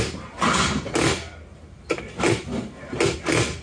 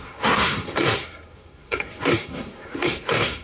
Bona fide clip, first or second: first